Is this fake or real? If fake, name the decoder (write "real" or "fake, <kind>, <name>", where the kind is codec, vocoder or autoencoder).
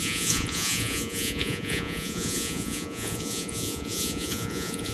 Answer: fake, vocoder, Vocos